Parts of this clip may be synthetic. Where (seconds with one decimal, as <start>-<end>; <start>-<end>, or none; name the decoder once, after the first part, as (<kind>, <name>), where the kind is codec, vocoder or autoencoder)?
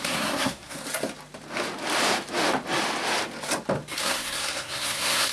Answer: 0.0-0.8 (codec, SNAC); 4.0-5.3